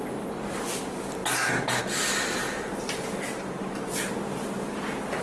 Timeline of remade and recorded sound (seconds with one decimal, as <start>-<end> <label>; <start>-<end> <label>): 0.0-2.4 recorded; 2.4-3.9 remade; 3.9-5.2 recorded